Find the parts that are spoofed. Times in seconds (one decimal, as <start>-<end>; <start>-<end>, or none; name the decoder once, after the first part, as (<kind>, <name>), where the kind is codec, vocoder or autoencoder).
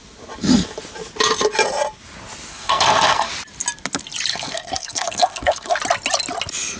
2.5-3.3 (codec, SNAC); 4.3-5.8